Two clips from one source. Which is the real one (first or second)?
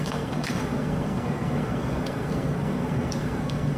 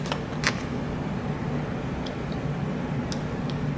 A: second